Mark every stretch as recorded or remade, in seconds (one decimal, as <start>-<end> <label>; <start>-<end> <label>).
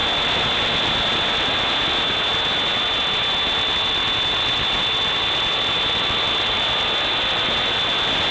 0.0-8.3 recorded